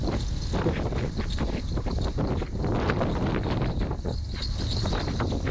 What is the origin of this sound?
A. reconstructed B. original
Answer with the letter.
B